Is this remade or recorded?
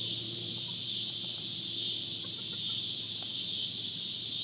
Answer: remade